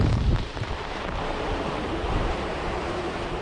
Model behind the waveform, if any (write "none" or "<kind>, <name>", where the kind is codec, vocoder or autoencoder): vocoder, BigVGAN v2